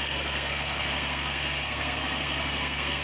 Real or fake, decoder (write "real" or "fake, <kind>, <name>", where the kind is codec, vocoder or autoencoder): fake, codec, SNAC